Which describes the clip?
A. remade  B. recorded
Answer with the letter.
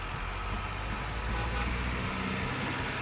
B